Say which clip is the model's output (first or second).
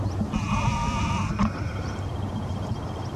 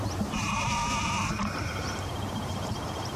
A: second